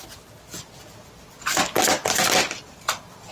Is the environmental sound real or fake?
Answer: real